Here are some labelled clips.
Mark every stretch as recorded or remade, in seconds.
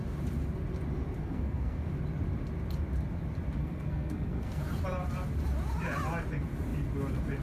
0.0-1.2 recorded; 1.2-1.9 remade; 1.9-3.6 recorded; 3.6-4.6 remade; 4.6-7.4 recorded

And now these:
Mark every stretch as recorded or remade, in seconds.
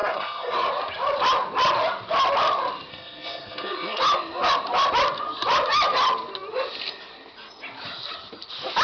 0.0-0.7 remade; 0.7-2.9 recorded; 2.9-4.0 remade; 4.0-8.8 recorded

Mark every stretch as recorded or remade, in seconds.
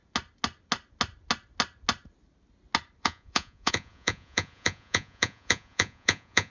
0.0-3.0 recorded; 3.0-6.5 remade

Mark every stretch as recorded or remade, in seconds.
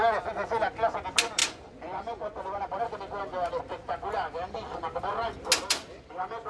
0.0-6.5 recorded